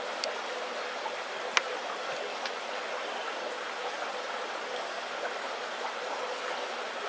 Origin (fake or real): real